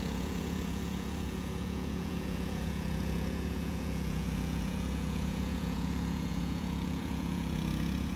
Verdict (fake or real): fake